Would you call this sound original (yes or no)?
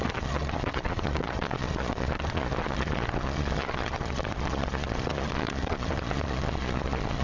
no